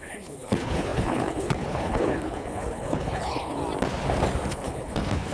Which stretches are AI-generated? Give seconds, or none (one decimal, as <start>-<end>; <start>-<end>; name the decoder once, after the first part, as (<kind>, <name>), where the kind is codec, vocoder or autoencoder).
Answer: 0.0-3.6 (codec, HILCodec); 4.5-5.3